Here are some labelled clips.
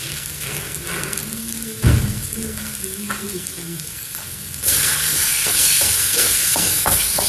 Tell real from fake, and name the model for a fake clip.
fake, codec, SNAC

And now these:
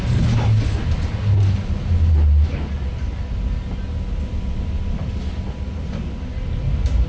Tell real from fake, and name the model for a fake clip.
real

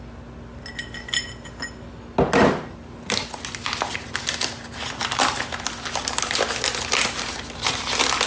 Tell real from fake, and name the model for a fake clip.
real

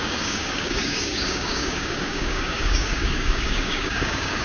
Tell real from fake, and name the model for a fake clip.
fake, codec, DAC